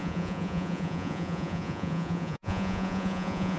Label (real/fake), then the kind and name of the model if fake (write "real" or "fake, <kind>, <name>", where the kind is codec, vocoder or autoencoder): fake, vocoder, Vocos